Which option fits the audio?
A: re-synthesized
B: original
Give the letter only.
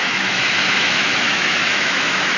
A